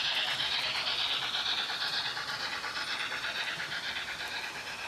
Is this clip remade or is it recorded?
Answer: recorded